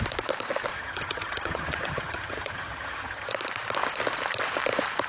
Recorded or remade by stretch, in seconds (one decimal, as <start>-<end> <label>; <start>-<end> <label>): 0.0-0.7 recorded; 0.7-3.3 remade; 3.3-5.1 recorded